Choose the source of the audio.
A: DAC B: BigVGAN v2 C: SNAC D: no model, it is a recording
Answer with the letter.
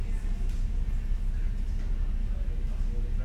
D